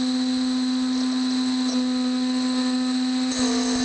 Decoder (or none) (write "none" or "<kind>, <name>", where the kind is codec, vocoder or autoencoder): none